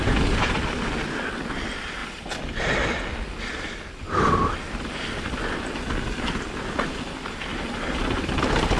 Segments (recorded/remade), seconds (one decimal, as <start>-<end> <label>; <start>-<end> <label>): 0.0-8.8 recorded